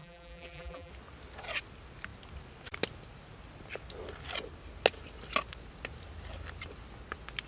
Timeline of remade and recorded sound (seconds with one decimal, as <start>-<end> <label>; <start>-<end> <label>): 0.0-0.9 remade; 0.9-7.5 recorded